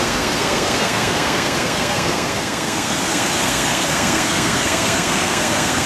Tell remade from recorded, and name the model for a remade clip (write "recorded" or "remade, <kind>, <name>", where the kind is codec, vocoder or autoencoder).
remade, codec, SNAC